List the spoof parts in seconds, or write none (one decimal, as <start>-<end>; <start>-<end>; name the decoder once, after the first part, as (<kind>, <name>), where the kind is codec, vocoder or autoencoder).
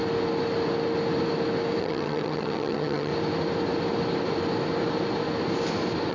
1.8-3.1 (vocoder, HiFi-GAN)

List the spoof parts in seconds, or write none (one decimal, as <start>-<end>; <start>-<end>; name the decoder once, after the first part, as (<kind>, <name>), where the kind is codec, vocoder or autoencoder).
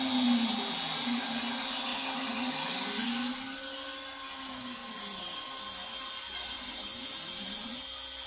none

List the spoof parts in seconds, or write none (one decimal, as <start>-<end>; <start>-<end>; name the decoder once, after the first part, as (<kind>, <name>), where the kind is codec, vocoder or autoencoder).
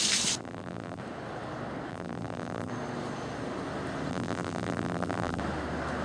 0.4-1.0 (vocoder, BigVGAN v2); 1.9-2.7; 4.1-5.4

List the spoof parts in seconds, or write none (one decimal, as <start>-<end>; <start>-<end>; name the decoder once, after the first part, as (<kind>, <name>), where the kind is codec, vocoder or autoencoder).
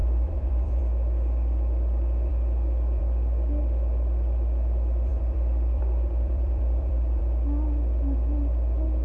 0.0-0.8 (vocoder, BigVGAN v2); 5.1-7.2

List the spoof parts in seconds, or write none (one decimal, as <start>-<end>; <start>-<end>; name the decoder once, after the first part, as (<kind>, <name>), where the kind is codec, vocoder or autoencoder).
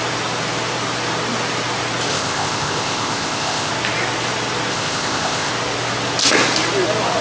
2.1-3.7 (codec, ZipCodec); 4.7-5.5